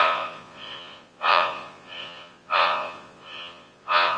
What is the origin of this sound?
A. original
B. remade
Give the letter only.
B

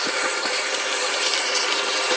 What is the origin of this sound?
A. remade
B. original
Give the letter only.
A